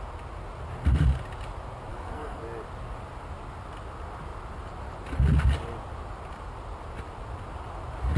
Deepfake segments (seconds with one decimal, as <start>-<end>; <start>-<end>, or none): 1.9-2.4